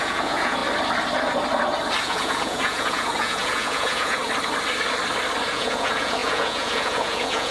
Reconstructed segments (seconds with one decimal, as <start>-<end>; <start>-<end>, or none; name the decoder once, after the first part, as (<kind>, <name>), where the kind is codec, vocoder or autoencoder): 0.0-0.6 (vocoder, Vocos); 2.0-4.2; 5.5-7.5